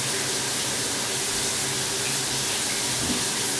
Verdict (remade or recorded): recorded